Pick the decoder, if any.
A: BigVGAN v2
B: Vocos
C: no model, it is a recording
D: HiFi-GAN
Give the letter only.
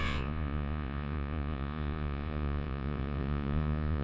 B